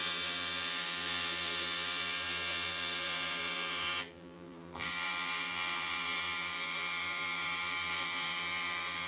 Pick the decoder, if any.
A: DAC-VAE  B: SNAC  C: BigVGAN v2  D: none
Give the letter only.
C